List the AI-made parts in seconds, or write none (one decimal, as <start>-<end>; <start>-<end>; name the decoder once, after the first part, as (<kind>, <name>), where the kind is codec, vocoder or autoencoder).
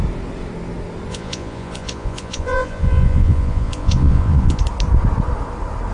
1.1-4.6 (vocoder, Vocos)